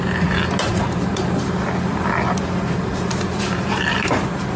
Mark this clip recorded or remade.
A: recorded